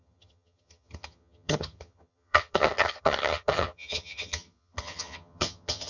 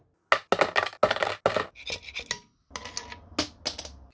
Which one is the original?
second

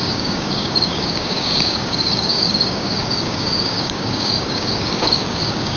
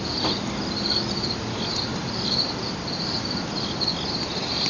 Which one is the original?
second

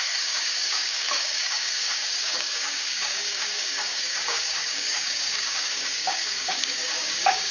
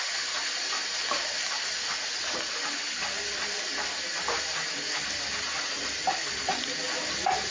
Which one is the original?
second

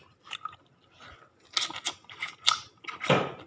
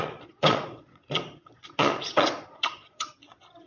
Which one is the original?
first